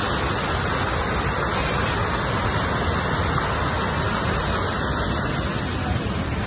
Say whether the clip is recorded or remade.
recorded